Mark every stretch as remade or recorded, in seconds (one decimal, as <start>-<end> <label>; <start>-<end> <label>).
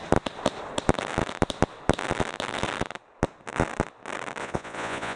0.0-4.4 recorded; 4.4-5.2 remade